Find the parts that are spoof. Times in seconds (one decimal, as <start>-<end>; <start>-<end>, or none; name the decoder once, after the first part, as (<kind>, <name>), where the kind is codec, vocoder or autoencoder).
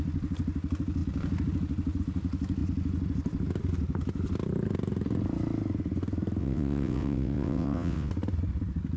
6.4-8.1 (vocoder, WaveNeXt)